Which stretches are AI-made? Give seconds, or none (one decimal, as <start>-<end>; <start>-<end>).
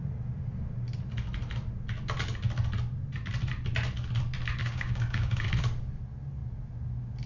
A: 4.6-5.5